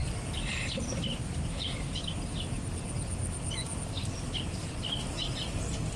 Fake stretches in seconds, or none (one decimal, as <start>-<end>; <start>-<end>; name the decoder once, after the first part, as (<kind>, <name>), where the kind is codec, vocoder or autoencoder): none